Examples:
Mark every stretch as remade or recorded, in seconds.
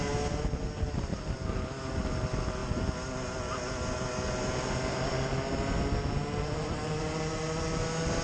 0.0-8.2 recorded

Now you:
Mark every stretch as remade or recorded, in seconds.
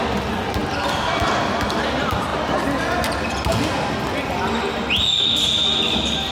0.0-0.6 recorded; 0.6-1.4 remade; 1.4-6.3 recorded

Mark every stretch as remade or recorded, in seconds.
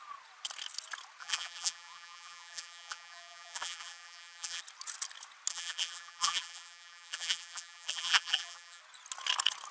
0.0-1.2 recorded; 1.2-4.6 remade; 4.6-5.5 recorded; 5.5-8.8 remade; 8.8-9.7 recorded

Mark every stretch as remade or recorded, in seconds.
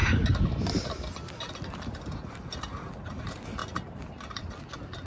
0.0-3.6 recorded; 3.6-4.6 remade; 4.6-5.1 recorded